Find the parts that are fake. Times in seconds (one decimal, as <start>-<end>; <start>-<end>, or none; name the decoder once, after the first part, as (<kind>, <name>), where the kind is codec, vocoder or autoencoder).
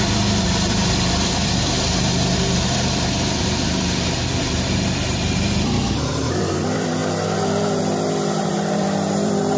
0.0-7.0 (vocoder, BigVGAN v2); 7.8-9.6